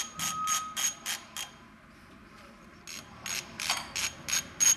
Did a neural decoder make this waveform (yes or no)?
no